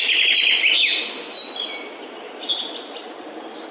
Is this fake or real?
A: real